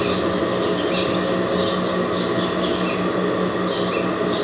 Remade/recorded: recorded